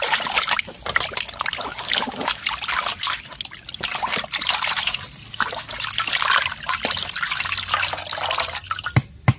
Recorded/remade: recorded